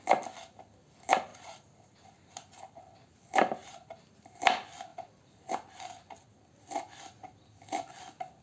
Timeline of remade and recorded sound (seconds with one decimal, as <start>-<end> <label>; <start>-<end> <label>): 0.0-1.3 recorded; 1.3-1.9 remade; 1.9-3.6 recorded; 3.6-4.4 remade; 4.4-4.9 recorded; 4.9-5.5 remade; 5.5-8.4 recorded